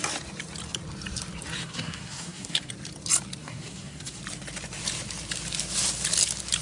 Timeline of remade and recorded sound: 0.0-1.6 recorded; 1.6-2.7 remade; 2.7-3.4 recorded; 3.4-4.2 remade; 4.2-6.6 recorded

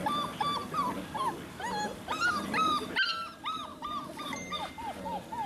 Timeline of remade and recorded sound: 0.0-3.7 recorded; 3.7-4.7 remade; 4.7-5.5 recorded

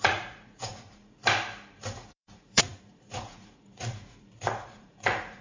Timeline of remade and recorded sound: 0.0-1.2 remade; 1.2-1.8 recorded; 1.8-5.4 remade